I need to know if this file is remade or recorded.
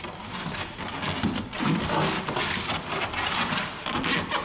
recorded